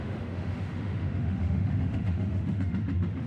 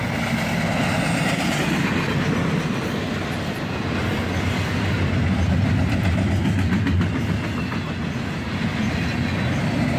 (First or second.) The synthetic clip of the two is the first